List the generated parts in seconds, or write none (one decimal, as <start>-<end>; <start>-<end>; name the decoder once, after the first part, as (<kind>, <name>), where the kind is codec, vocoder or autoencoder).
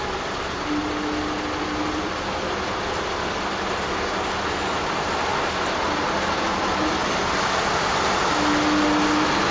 none